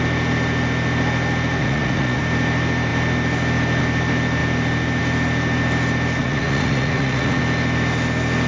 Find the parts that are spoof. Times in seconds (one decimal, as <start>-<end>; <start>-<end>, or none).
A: 1.6-2.2; 6.2-7.4